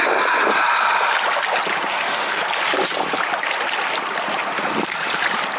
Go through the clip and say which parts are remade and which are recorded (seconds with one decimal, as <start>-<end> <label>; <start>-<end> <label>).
0.0-1.9 recorded; 1.9-2.4 remade; 2.4-5.6 recorded